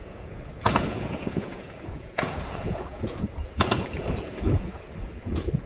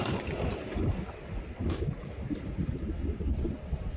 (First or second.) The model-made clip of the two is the first